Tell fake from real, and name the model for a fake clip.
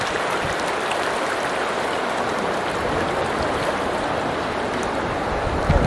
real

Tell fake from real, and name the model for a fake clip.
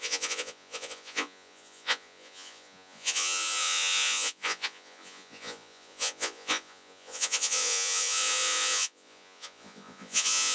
fake, vocoder, Vocos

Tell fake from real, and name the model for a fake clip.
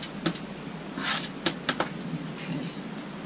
real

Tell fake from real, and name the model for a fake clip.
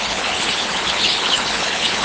fake, codec, HILCodec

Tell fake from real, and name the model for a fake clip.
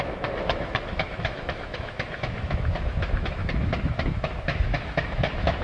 fake, autoencoder, DAC-VAE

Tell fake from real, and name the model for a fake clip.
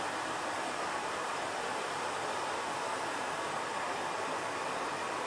fake, vocoder, BigVGAN v2